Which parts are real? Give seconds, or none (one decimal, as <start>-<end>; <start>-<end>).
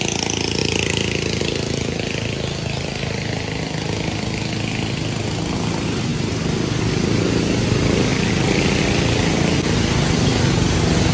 0.0-11.1